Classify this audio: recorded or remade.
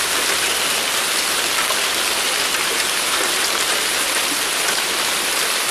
recorded